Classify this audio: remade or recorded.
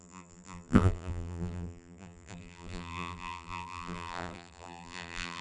remade